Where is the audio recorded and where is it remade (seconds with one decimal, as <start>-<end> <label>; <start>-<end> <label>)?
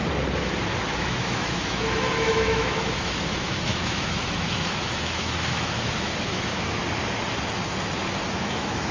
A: 0.0-1.0 recorded; 1.0-6.8 remade; 6.8-8.3 recorded; 8.3-8.9 remade